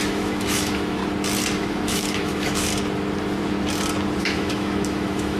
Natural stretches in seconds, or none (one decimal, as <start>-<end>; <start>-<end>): 1.0-1.6; 2.7-4.2